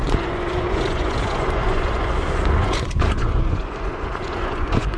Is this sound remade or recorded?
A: remade